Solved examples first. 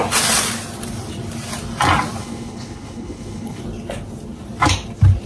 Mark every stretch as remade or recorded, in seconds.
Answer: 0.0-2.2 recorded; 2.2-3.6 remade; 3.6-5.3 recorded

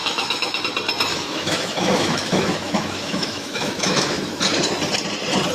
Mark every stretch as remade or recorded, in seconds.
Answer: 0.0-0.6 remade; 0.6-1.1 recorded; 1.1-4.4 remade; 4.4-5.5 recorded

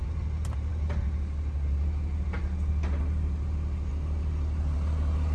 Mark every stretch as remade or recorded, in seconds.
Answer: 0.0-5.3 recorded

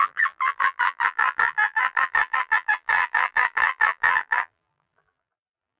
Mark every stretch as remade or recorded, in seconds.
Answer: 0.0-5.8 remade

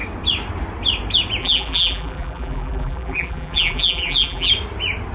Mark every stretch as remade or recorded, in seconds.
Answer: 0.0-1.4 recorded; 1.4-4.5 remade; 4.5-5.1 recorded

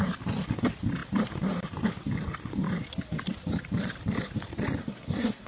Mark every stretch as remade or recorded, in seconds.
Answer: 0.0-4.8 recorded; 4.8-5.5 remade

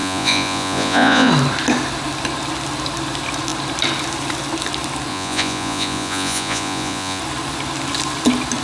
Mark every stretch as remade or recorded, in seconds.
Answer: 0.0-1.3 remade; 1.3-5.1 recorded; 5.1-7.2 remade; 7.2-8.6 recorded

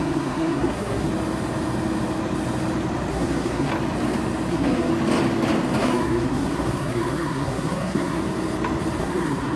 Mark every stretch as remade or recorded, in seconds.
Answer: 0.0-1.1 remade; 1.1-3.1 recorded; 3.1-3.7 remade; 3.7-4.5 recorded; 4.5-4.9 remade; 4.9-5.8 recorded; 5.8-8.2 remade; 8.2-9.0 recorded; 9.0-9.6 remade